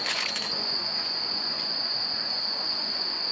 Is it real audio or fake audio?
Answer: fake